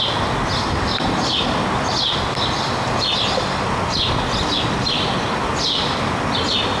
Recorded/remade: recorded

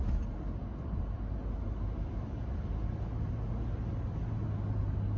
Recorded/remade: recorded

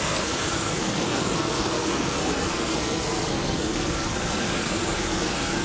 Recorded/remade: remade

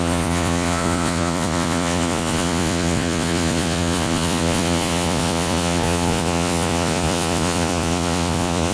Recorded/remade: remade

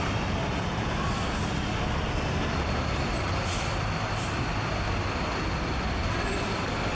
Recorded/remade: remade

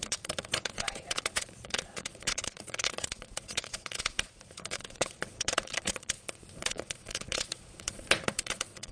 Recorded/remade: remade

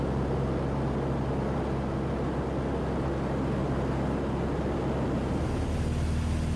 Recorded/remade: recorded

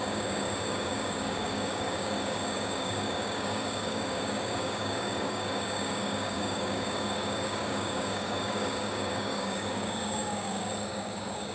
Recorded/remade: remade